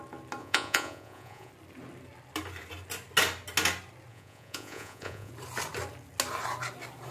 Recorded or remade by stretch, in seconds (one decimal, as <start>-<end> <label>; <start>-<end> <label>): 0.0-0.4 recorded; 0.4-1.5 remade; 1.5-4.1 recorded; 4.1-5.3 remade; 5.3-7.1 recorded